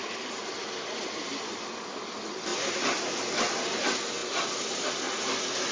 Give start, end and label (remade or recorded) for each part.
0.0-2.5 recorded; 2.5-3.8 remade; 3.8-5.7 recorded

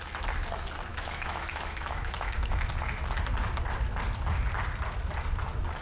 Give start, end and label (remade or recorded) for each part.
0.0-0.9 recorded; 0.9-2.7 remade; 2.7-5.8 recorded

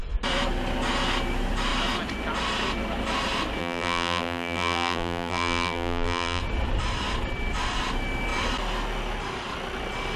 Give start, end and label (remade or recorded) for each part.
0.0-3.6 recorded; 3.6-6.4 remade; 6.4-10.2 recorded

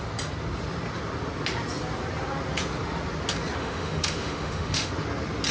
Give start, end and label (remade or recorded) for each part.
0.0-3.6 recorded; 3.6-4.9 remade; 4.9-5.5 recorded

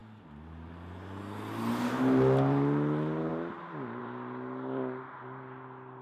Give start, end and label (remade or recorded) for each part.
0.0-6.0 recorded

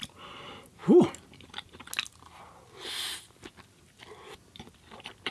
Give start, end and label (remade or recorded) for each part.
0.0-5.3 recorded

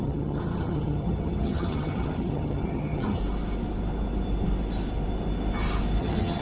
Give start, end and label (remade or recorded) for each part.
0.0-3.2 remade; 3.2-6.0 recorded; 6.0-6.4 remade